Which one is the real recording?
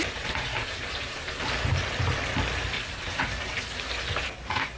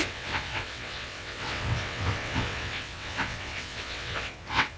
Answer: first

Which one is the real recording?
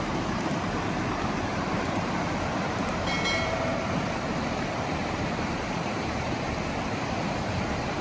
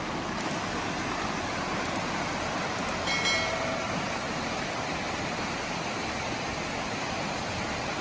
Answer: second